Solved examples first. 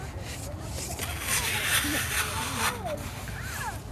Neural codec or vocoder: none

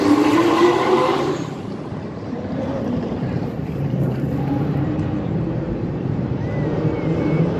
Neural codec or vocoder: vocoder, BigVGAN v2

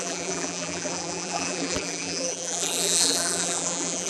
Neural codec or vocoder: vocoder, BigVGAN v2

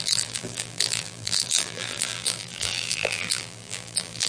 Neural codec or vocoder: vocoder, BigVGAN v2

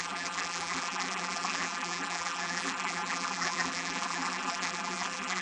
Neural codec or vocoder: vocoder, BigVGAN v2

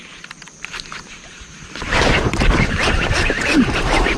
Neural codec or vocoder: vocoder, BigVGAN v2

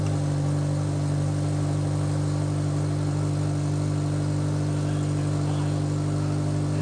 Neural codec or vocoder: none